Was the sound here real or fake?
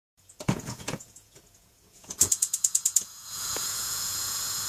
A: fake